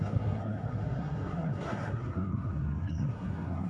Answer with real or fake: fake